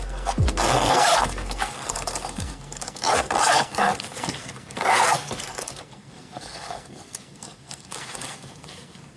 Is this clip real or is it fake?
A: fake